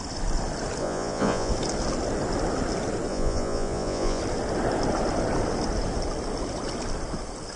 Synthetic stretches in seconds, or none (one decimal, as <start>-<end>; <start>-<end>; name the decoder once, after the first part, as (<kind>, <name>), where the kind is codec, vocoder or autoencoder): 0.8-1.5 (vocoder, Vocos); 3.1-4.2